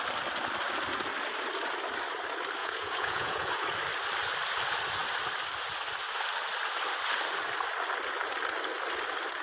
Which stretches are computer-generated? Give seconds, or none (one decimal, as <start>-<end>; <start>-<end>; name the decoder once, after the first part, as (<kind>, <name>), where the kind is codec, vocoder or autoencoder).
2.6-3.5 (vocoder, Vocos)

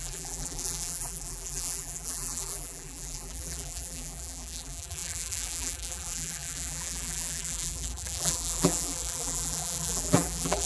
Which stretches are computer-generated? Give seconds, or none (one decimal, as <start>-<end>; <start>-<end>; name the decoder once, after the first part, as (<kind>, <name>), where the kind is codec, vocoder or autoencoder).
0.0-10.7 (vocoder, BigVGAN v2)

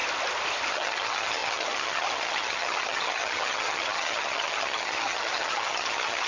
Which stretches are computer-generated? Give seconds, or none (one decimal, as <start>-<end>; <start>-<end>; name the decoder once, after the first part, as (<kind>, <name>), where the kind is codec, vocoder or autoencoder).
0.7-6.3 (vocoder, HiFi-GAN)

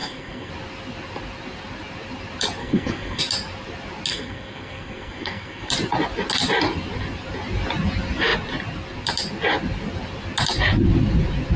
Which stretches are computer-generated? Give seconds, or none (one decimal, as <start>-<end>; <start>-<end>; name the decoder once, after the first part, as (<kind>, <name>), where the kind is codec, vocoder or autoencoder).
0.0-0.5 (codec, SNAC); 2.6-3.2; 4.1-5.7

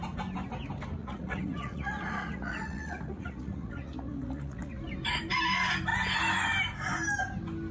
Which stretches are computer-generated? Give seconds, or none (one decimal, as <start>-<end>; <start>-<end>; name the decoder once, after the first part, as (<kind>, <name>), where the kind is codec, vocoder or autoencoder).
1.0-4.8 (vocoder, Vocos)